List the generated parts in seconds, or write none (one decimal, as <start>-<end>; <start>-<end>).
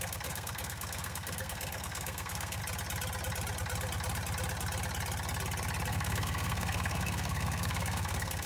0.0-2.6; 5.9-8.5